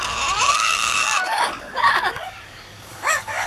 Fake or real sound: fake